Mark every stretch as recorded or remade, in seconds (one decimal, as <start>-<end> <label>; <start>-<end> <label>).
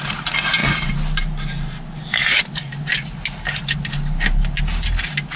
0.0-5.4 recorded